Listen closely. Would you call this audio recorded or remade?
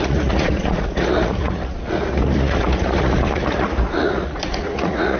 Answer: remade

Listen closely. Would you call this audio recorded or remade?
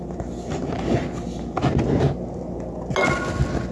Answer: recorded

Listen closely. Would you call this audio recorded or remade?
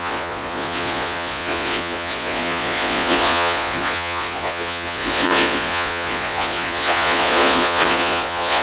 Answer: remade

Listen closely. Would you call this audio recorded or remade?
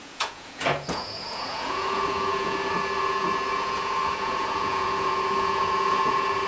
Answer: remade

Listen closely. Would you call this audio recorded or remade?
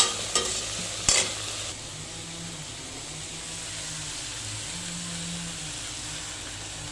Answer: recorded